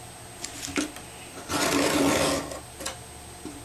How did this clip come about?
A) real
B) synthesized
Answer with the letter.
A